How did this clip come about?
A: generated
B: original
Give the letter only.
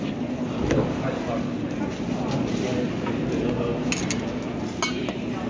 B